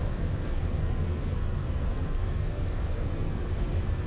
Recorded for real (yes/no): no